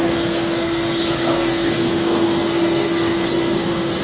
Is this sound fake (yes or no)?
yes